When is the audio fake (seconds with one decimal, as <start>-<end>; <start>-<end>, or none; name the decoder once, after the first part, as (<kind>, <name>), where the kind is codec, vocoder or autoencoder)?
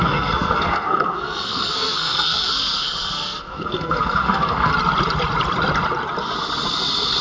0.0-4.7 (codec, SNAC)